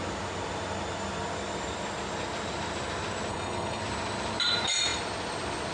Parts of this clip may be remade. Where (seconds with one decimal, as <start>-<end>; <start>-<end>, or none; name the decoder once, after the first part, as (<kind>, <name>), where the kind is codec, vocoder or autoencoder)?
3.3-3.8 (codec, HILCodec)